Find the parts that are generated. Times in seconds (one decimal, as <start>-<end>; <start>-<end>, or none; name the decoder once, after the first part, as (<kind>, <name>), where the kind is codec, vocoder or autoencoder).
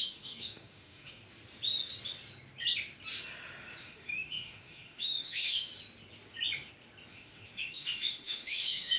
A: 0.0-1.2 (autoencoder, DAC-VAE); 3.8-5.7; 7.1-9.0